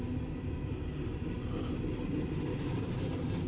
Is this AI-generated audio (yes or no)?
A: no